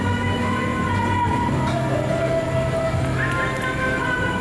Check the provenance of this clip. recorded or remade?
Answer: recorded